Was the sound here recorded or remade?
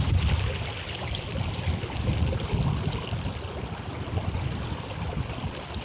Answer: remade